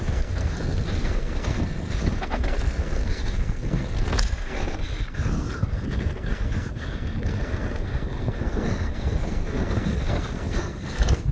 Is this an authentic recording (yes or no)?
no